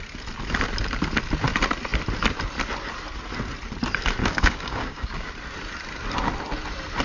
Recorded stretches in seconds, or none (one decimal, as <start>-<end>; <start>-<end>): 0.0-4.2; 5.3-7.0